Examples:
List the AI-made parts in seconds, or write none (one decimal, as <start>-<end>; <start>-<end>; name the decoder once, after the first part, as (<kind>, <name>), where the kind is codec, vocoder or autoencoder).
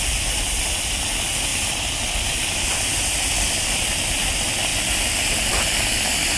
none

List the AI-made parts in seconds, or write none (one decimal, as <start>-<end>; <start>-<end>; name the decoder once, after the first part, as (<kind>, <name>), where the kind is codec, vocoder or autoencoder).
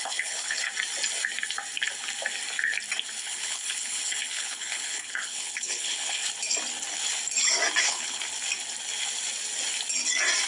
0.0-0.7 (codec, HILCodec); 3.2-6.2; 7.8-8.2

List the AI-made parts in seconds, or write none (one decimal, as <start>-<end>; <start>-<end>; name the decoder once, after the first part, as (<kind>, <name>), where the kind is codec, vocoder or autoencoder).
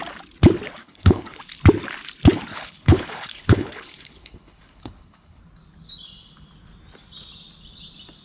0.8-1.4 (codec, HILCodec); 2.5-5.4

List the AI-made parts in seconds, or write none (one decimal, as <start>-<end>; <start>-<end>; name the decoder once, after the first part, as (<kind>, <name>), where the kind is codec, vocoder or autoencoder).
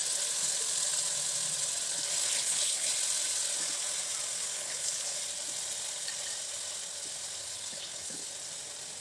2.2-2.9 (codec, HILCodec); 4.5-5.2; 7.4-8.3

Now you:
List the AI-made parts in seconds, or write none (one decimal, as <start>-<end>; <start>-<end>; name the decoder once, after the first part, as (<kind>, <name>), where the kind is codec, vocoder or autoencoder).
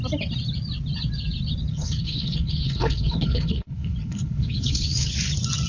1.7-5.1 (codec, HILCodec)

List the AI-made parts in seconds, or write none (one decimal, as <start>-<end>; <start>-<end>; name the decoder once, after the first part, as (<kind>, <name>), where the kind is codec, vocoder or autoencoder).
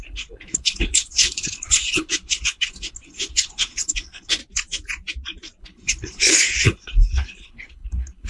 0.0-4.4 (codec, HILCodec); 5.6-8.3